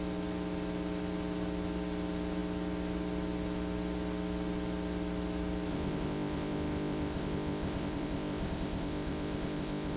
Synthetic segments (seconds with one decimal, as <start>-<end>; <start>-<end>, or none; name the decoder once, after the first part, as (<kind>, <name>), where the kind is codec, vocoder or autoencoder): 5.7-10.0 (codec, ZipCodec)